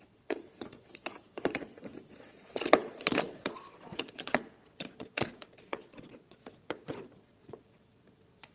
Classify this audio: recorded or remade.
remade